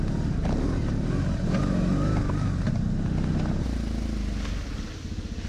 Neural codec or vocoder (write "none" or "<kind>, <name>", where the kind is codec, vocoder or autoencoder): none